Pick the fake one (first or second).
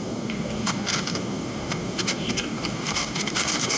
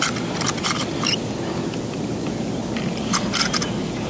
first